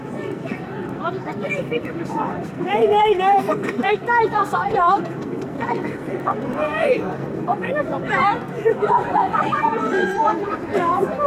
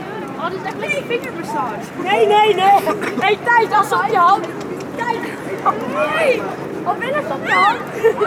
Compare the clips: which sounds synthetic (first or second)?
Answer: first